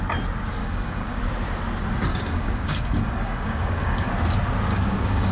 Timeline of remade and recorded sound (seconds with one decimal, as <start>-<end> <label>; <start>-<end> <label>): 0.0-0.6 recorded; 0.6-1.2 remade; 1.2-2.1 recorded; 2.1-4.1 remade; 4.1-4.7 recorded; 4.7-5.3 remade